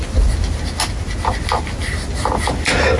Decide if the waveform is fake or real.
real